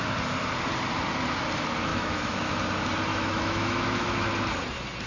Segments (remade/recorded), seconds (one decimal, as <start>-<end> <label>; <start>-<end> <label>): 0.0-1.9 recorded; 1.9-2.5 remade; 2.5-3.1 recorded; 3.1-4.3 remade; 4.3-5.1 recorded